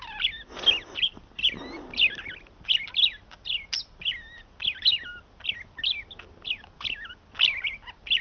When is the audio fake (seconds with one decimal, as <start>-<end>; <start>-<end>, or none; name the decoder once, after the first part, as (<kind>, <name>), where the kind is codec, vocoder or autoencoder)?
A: none